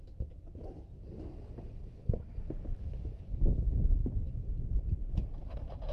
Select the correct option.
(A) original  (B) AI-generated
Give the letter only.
A